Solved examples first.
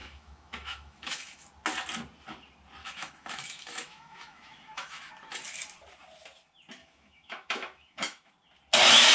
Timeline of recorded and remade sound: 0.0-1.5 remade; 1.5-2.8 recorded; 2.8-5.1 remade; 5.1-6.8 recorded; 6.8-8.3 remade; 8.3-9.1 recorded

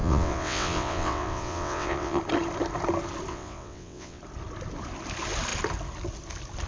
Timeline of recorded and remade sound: 0.0-2.2 remade; 2.2-3.3 recorded; 3.3-4.2 remade; 4.2-6.7 recorded